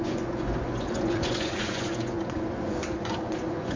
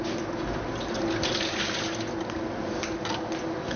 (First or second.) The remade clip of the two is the first